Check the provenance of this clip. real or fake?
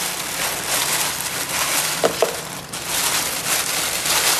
real